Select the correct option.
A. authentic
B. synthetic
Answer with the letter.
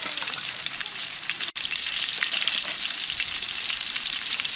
B